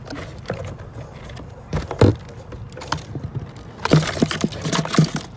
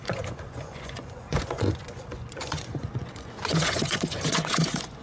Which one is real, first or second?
first